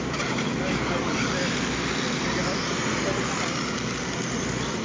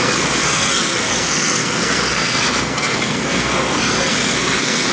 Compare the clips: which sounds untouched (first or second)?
first